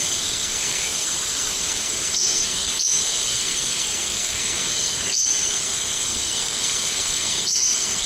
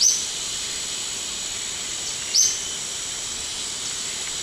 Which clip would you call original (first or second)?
second